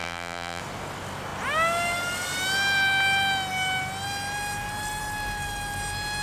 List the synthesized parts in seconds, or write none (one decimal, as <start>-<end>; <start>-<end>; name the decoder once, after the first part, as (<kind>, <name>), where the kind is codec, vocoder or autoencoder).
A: 0.0-0.6 (vocoder, BigVGAN v2)

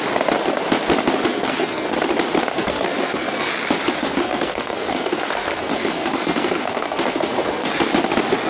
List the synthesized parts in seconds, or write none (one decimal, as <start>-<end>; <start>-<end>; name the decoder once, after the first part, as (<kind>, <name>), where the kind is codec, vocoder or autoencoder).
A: 1.3-2.0 (codec, SNAC); 2.5-3.5; 4.0-7.7